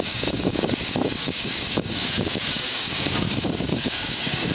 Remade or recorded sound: remade